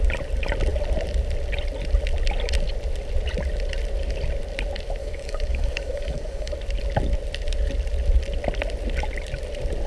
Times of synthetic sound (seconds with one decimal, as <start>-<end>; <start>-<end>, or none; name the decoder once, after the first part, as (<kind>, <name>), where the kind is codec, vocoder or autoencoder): 5.0-6.5 (codec, DAC)